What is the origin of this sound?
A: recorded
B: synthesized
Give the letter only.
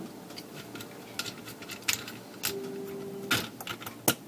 A